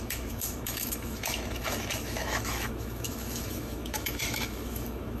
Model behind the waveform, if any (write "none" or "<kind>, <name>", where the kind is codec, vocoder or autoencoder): autoencoder, DAC-VAE